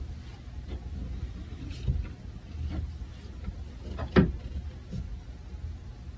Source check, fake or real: real